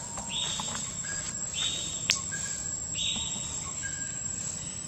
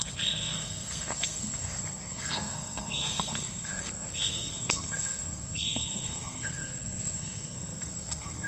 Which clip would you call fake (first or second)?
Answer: second